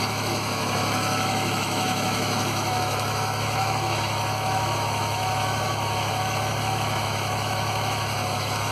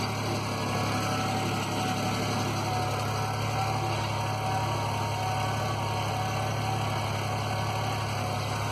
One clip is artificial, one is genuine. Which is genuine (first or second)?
second